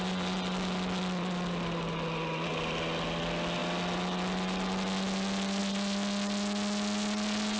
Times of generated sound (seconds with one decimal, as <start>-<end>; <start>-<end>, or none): none